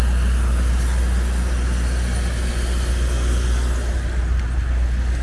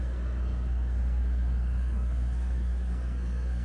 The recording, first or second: first